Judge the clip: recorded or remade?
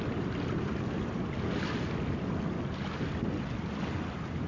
recorded